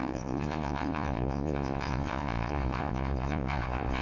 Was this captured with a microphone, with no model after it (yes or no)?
no